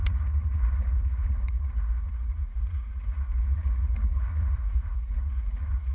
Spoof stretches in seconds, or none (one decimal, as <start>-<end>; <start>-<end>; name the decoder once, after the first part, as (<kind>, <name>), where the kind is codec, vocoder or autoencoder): 0.0-5.9 (vocoder, Vocos)